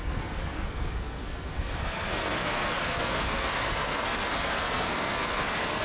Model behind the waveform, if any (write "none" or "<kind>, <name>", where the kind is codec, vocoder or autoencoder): codec, SNAC